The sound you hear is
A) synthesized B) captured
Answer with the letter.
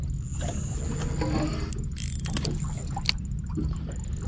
B